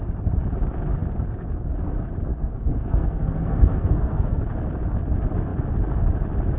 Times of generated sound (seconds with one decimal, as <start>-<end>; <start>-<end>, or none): 2.3-4.4